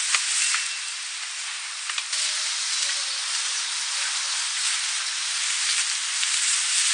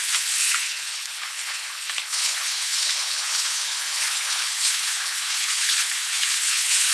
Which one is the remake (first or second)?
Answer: second